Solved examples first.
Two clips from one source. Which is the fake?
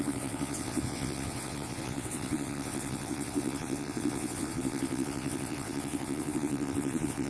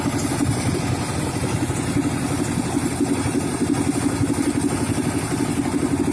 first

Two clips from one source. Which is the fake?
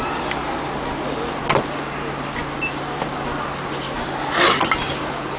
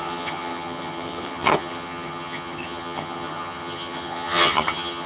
second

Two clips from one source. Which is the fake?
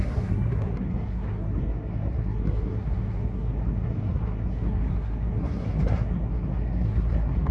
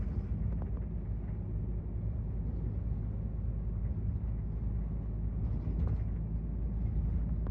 first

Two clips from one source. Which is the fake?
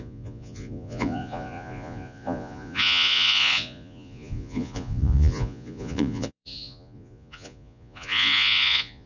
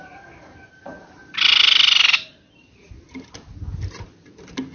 first